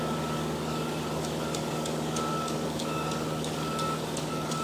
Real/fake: fake